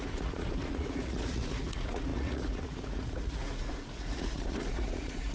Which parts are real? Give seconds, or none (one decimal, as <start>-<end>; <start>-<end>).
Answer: none